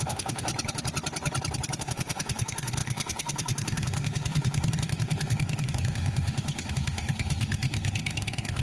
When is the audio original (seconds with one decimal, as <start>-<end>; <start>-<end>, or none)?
0.5-1.8